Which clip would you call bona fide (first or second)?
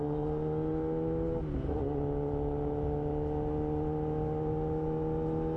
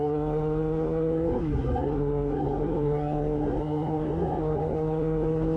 first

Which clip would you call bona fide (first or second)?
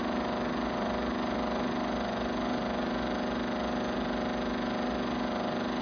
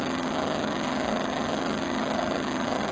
first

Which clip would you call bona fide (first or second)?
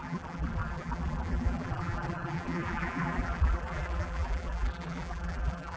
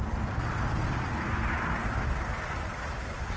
second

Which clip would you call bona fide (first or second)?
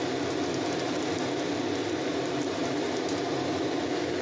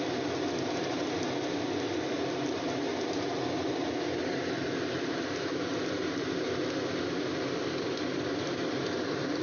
first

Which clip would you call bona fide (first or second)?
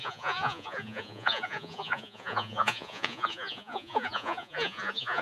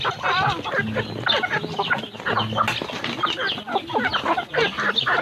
second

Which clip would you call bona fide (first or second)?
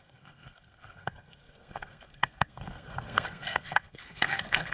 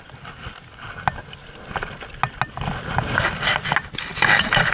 second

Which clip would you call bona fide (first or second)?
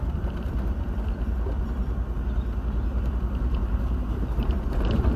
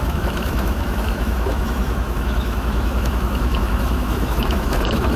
first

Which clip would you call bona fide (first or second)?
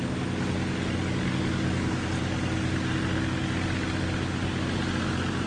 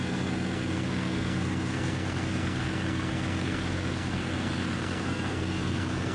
first